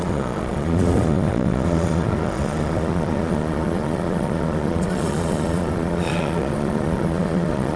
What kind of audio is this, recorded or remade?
remade